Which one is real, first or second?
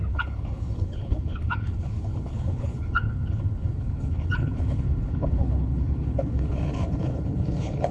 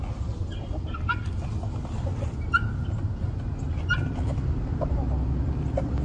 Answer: second